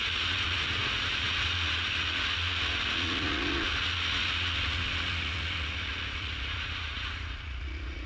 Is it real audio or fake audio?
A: fake